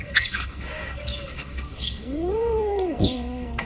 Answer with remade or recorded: remade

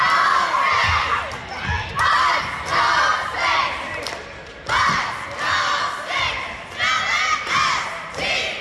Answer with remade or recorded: recorded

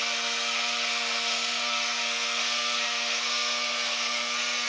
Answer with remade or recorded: remade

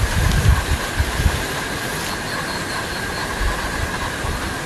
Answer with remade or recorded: recorded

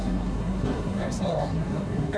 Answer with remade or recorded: remade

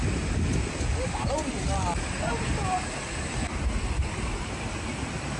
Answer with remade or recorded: recorded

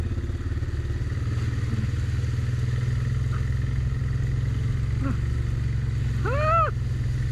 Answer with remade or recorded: recorded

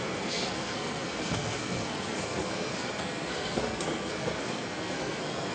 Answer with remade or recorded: remade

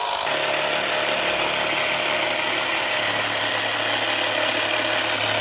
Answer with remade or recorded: recorded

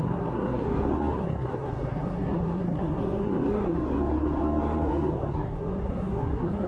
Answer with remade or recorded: remade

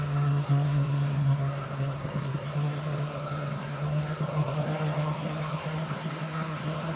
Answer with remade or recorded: remade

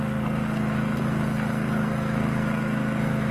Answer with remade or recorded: remade